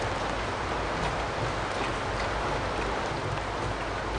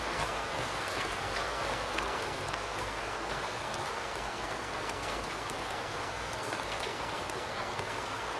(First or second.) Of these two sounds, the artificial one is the second